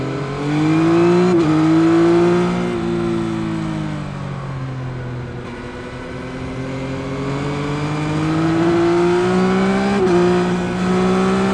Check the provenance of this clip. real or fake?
real